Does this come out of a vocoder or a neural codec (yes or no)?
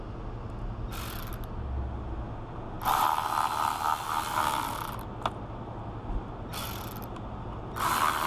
no